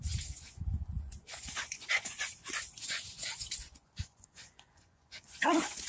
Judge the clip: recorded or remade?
remade